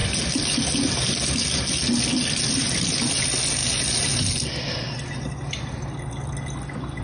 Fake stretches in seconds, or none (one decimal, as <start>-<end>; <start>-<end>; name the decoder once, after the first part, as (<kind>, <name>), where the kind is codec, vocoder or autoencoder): none